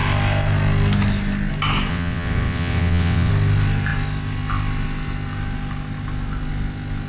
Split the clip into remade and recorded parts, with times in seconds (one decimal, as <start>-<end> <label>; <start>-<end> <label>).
0.0-1.9 recorded; 1.9-3.3 remade; 3.3-7.1 recorded